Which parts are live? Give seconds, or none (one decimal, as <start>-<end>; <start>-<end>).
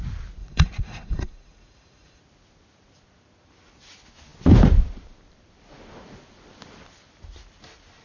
0.0-0.4; 2.2-8.0